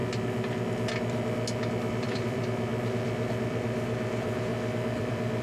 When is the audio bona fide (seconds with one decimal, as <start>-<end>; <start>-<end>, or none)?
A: 0.0-1.9; 2.7-3.4; 4.5-5.0